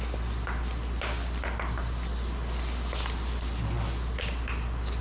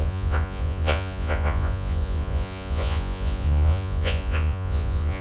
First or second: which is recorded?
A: first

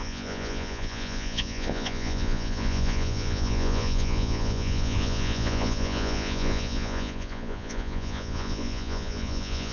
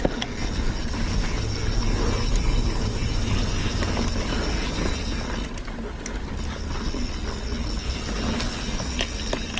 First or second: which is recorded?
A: second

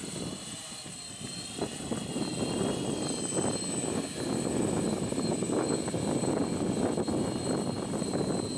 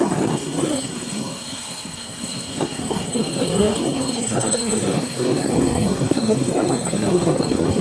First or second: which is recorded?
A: first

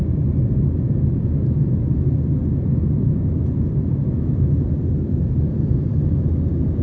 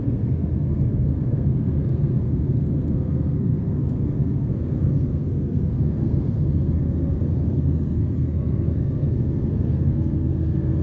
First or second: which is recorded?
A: first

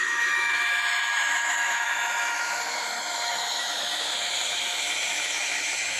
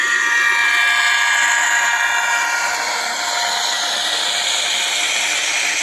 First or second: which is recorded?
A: second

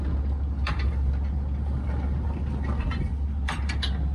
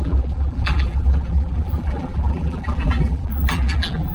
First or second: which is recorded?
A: first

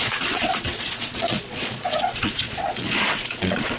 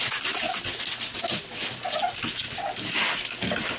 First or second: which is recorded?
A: second